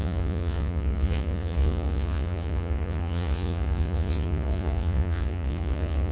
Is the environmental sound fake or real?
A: fake